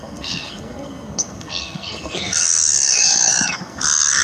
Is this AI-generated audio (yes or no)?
yes